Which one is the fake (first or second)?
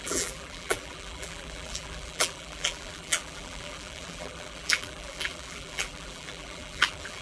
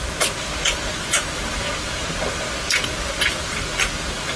first